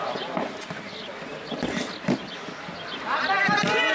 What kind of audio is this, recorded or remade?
recorded